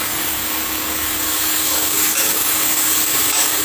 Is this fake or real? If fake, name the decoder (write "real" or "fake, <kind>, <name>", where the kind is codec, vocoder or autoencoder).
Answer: fake, codec, DAC